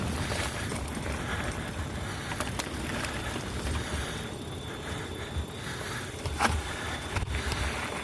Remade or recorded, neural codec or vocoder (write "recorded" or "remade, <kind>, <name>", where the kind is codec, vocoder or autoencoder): recorded